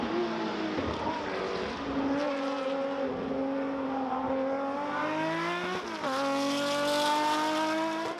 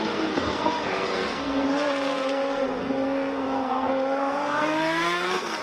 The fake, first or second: second